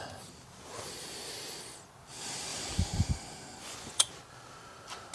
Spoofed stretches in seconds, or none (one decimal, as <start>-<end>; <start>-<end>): 3.5-4.1